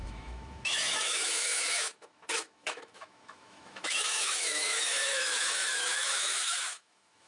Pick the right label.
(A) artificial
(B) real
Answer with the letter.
A